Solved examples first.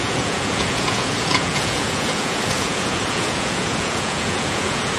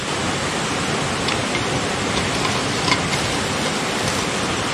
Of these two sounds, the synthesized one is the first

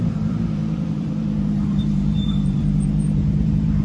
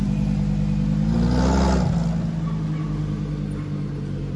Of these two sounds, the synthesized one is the first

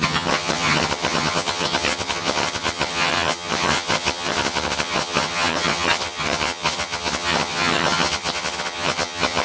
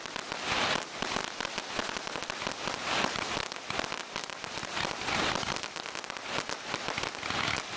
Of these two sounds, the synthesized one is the first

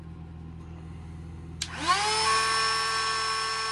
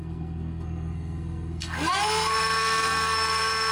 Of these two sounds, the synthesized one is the second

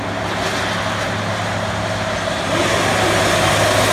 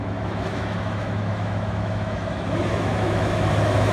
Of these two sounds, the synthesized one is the second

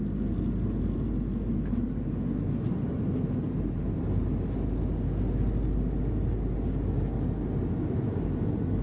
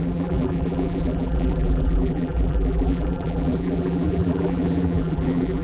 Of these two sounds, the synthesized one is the second